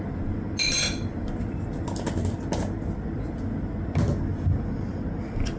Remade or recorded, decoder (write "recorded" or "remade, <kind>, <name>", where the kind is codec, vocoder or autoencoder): recorded